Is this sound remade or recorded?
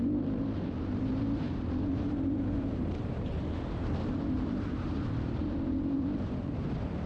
remade